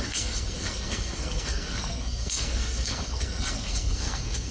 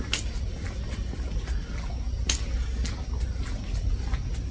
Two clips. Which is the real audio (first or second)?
second